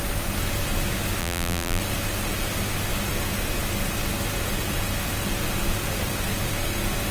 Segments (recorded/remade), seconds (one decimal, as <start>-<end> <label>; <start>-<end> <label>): 0.0-1.2 recorded; 1.2-1.8 remade; 1.8-7.1 recorded